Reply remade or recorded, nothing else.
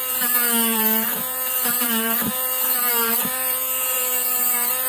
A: remade